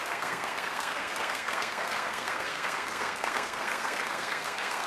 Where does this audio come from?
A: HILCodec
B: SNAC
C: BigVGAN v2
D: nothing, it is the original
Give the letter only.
B